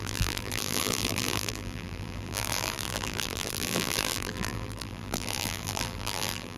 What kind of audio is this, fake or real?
fake